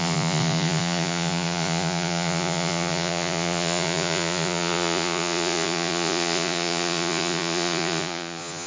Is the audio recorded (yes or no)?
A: no